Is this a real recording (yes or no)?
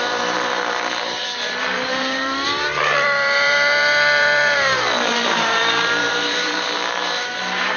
no